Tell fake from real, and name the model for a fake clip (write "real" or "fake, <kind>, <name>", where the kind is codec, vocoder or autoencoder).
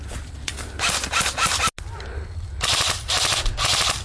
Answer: real